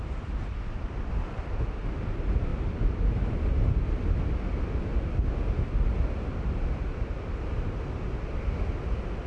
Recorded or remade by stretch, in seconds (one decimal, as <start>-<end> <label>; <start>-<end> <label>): 0.0-1.1 remade; 1.1-2.5 recorded; 2.5-3.1 remade; 3.1-9.3 recorded